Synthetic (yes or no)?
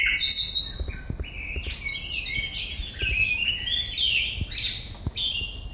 no